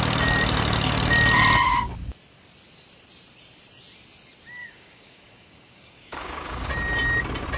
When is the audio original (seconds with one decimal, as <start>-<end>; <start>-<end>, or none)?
0.0-4.6; 6.7-7.6